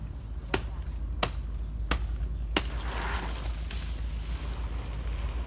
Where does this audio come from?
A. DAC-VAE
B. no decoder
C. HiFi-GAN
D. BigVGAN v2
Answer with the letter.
B